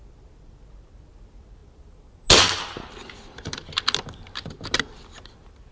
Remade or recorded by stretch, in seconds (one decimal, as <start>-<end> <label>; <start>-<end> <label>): 0.0-5.7 recorded